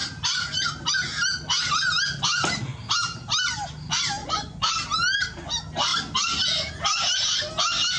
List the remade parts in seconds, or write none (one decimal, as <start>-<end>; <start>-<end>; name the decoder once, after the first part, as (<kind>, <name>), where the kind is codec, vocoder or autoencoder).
4.2-4.7 (vocoder, Vocos)